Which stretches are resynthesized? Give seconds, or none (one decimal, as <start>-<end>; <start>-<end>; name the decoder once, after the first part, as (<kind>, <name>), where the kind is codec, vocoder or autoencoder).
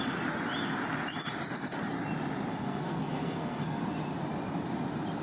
2.5-3.8 (codec, SNAC)